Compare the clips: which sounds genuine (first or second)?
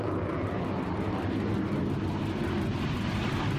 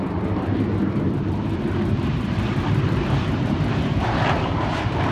first